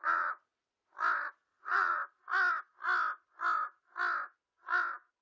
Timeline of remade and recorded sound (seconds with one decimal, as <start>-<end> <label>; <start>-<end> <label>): 0.0-0.5 remade; 0.5-1.6 recorded; 1.6-2.0 remade; 2.0-5.2 recorded